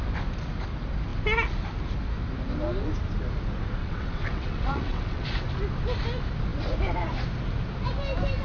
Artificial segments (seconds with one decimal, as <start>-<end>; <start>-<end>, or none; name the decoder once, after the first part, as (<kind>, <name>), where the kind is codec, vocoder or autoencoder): 3.8-5.5 (vocoder, WaveNeXt)